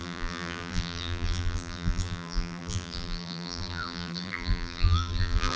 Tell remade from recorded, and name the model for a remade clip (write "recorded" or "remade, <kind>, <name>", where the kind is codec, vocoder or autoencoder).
remade, vocoder, BigVGAN v2